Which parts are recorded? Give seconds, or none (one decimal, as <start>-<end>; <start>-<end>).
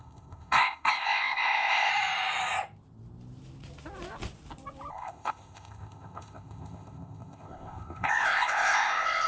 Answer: 1.9-4.9